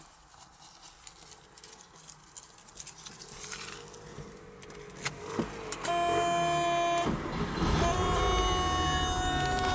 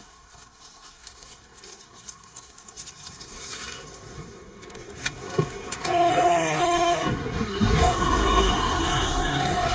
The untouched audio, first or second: first